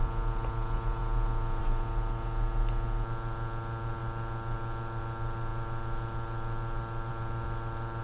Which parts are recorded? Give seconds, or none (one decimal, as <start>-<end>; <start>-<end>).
0.0-8.0